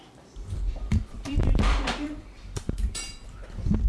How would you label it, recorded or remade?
remade